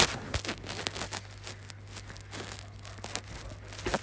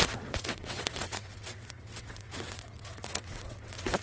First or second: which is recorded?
first